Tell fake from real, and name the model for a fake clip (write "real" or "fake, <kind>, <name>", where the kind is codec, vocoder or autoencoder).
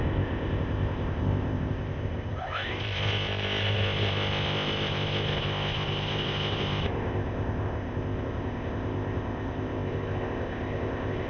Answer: fake, codec, ZipCodec